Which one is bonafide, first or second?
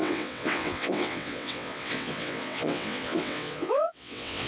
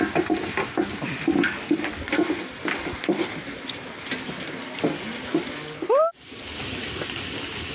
second